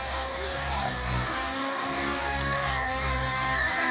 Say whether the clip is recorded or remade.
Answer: remade